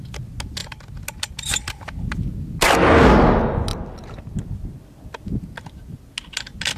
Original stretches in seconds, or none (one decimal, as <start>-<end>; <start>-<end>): 0.0-6.8